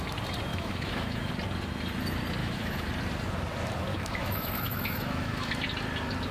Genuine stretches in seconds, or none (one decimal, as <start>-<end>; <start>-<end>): 0.0-0.5; 1.3-2.4; 2.9-3.9; 5.5-6.3